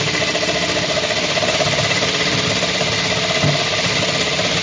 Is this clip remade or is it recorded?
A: recorded